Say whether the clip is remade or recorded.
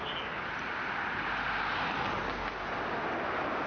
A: recorded